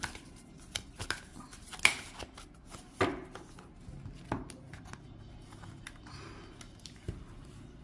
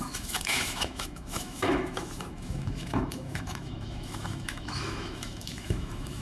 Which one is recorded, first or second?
first